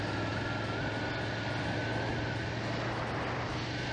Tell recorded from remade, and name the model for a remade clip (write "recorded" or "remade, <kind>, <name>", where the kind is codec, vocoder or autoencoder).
recorded